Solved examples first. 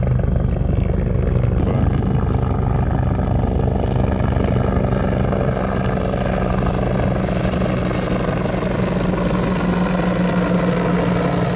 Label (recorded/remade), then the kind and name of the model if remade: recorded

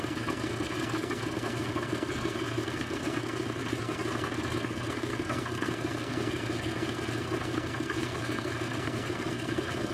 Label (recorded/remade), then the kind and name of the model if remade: remade, codec, SNAC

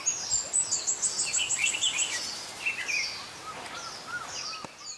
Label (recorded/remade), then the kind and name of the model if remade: recorded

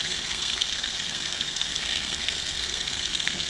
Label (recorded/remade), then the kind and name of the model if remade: remade, codec, SNAC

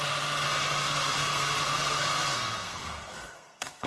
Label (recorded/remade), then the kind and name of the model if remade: remade, codec, SNAC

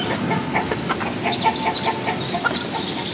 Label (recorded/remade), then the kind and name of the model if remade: recorded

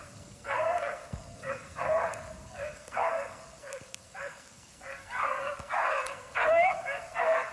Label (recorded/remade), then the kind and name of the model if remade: remade, codec, SNAC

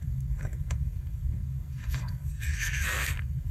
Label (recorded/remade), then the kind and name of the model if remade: remade, codec, SNAC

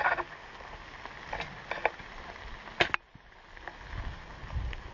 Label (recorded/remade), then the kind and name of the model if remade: recorded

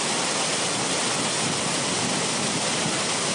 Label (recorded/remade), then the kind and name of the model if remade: recorded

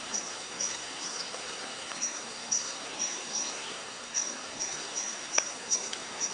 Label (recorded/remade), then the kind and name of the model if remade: remade, codec, SNAC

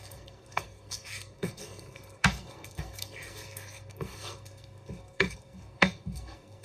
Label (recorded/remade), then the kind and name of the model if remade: remade, codec, SNAC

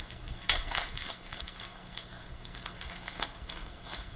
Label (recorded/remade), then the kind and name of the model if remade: remade, codec, SNAC